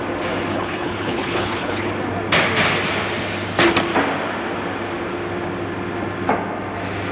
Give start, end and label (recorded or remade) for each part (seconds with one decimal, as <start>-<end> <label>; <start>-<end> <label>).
0.0-0.5 recorded; 0.5-1.9 remade; 1.9-7.1 recorded